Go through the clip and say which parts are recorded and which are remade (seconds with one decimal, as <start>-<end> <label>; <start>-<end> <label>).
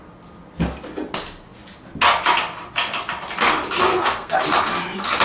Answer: 0.0-3.9 recorded; 3.9-4.4 remade; 4.4-5.2 recorded